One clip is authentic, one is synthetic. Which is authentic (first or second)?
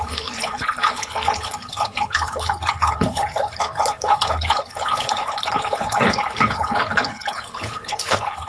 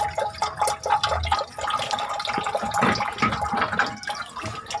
second